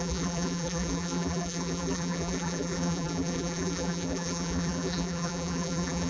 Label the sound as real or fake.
fake